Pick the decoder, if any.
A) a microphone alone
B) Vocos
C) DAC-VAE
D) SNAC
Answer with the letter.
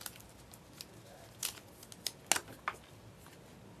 A